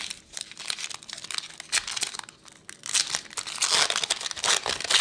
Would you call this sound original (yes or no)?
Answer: yes